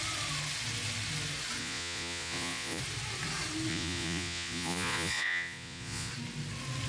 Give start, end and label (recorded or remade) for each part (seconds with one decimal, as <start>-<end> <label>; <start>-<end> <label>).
0.0-1.6 recorded; 1.6-2.8 remade; 2.8-3.7 recorded; 3.7-6.1 remade; 6.1-6.9 recorded